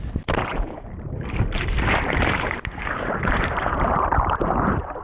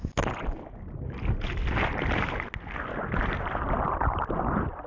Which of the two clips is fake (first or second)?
first